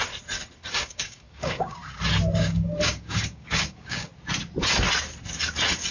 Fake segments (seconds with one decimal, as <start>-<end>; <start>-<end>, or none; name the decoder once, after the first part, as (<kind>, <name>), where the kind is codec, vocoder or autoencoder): 0.7-1.8 (codec, DAC); 2.4-4.1